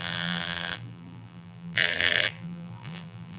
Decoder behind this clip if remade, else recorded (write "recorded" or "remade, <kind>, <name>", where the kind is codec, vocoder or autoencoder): remade, vocoder, BigVGAN v2